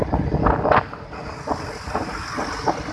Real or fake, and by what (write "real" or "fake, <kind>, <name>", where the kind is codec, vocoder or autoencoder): real